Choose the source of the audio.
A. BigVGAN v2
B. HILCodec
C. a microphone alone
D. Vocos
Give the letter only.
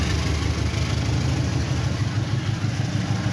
C